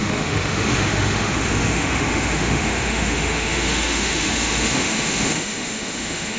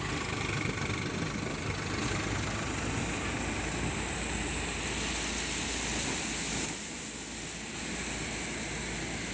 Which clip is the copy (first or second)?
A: first